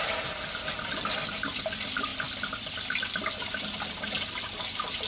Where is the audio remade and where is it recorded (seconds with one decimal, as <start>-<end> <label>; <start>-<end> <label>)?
0.0-5.1 recorded